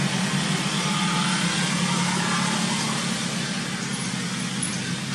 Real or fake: real